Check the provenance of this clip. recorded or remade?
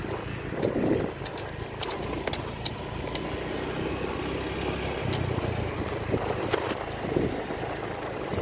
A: recorded